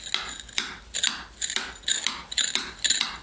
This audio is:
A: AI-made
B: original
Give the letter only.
B